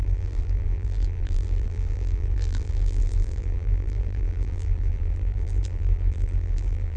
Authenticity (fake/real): fake